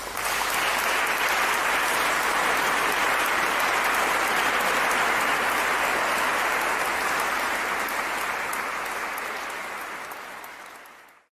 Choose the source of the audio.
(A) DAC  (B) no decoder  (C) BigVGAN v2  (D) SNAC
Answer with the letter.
B